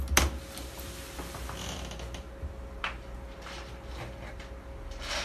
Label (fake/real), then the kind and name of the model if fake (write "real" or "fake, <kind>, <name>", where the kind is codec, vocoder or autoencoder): real